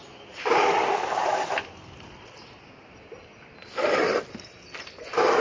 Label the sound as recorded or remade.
recorded